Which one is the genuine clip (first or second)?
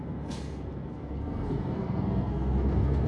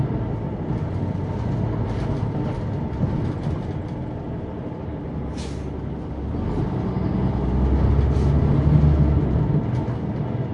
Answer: second